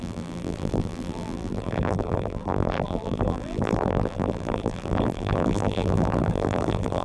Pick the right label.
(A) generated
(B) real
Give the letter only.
A